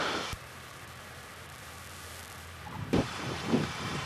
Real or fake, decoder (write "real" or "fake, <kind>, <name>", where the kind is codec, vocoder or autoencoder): fake, vocoder, BigVGAN v2